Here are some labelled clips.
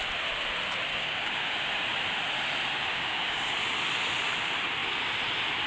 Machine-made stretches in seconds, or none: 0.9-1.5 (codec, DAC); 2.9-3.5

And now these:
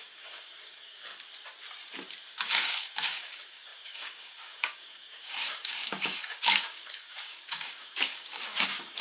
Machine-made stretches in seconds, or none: 0.0-1.1 (codec, DAC); 2.3-9.0

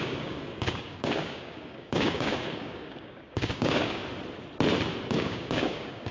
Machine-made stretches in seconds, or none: 0.0-4.0 (codec, DAC); 5.1-6.1